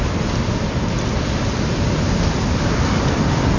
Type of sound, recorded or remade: recorded